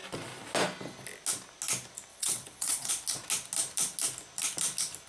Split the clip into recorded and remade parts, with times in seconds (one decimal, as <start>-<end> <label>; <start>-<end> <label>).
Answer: 0.0-2.1 recorded; 2.1-2.9 remade; 2.9-5.1 recorded